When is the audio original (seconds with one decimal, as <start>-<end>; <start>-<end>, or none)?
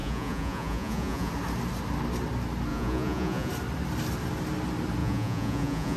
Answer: 1.3-2.7; 3.5-5.0